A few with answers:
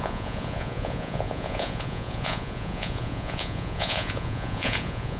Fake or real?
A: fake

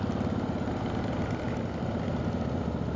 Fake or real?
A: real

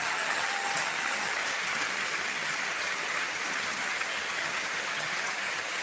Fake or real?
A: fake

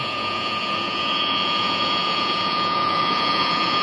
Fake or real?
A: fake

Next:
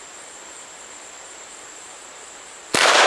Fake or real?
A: fake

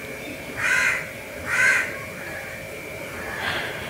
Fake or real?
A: fake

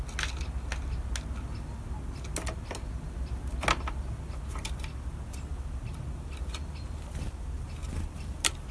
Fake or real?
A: real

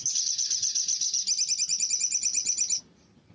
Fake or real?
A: real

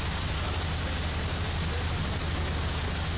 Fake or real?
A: real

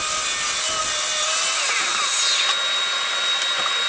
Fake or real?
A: real